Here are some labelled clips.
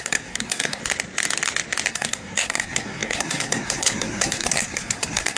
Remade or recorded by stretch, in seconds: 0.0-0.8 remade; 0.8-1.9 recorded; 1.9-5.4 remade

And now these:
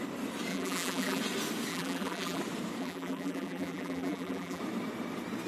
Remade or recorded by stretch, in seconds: 0.0-0.5 recorded; 0.5-1.2 remade; 1.2-1.7 recorded; 1.7-2.4 remade; 2.4-2.8 recorded; 2.8-4.6 remade; 4.6-5.5 recorded

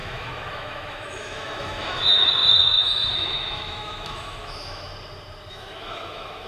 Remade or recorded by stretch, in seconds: 0.0-4.9 remade; 4.9-5.5 recorded; 5.5-6.5 remade